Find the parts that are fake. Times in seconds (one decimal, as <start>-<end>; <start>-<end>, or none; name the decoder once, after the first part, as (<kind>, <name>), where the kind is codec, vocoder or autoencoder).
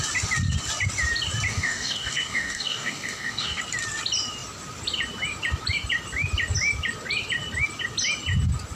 1.5-3.6 (codec, DAC)